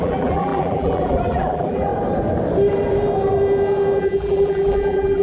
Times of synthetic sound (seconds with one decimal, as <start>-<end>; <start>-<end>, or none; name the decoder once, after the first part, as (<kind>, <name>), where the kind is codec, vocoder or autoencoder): 0.0-1.9 (vocoder, BigVGAN v2); 4.0-5.2